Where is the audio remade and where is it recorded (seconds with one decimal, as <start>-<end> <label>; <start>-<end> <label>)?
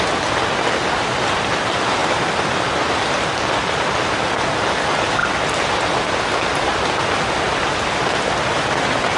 0.0-9.2 recorded